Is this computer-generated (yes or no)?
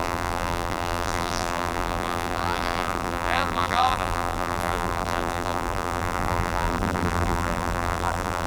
yes